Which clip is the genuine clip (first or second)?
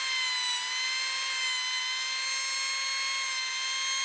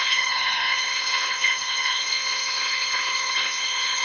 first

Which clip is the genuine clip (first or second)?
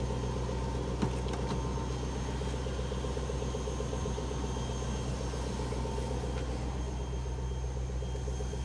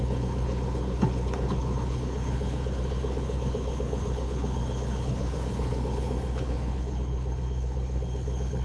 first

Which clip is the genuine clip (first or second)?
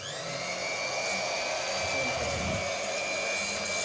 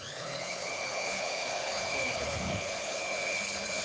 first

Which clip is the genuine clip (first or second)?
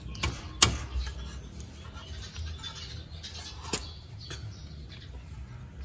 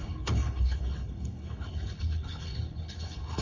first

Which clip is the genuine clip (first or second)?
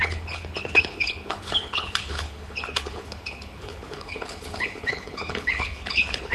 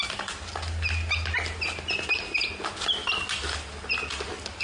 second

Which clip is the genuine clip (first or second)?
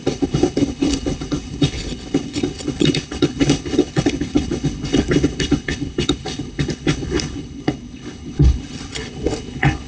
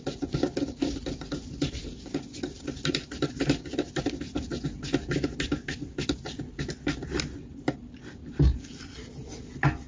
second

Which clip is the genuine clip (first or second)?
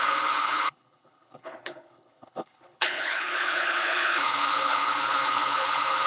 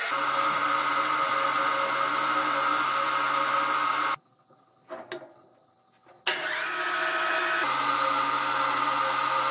second